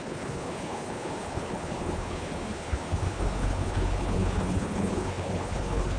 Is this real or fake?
fake